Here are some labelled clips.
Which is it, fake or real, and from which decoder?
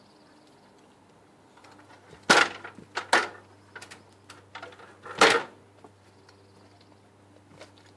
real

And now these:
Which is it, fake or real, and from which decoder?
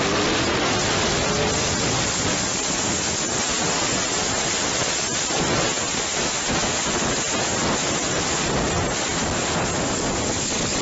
real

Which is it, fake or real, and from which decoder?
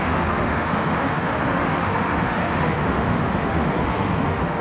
fake, autoencoder, DAC-VAE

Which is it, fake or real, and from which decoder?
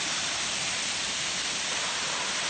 real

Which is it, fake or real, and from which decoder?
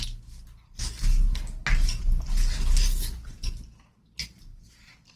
real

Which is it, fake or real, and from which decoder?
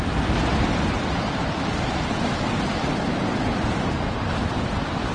real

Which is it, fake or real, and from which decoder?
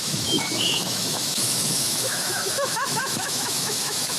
fake, autoencoder, DAC-VAE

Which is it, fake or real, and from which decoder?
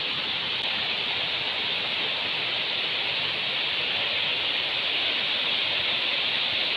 real